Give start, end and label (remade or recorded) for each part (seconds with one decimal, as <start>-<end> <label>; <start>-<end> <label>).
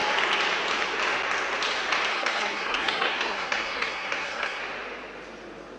0.0-2.1 recorded; 2.1-4.6 remade; 4.6-5.8 recorded